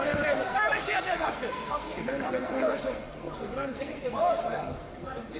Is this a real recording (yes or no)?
no